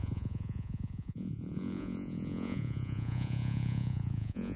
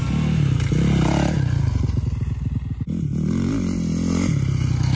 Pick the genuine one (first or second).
second